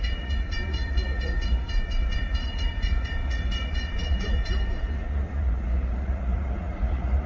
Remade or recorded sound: remade